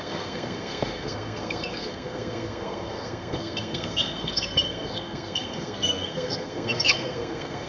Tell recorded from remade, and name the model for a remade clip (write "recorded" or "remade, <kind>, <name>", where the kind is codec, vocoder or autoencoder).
remade, codec, SNAC